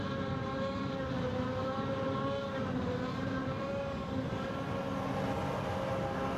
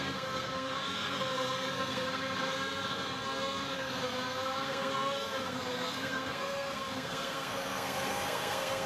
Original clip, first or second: first